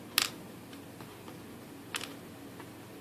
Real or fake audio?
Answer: real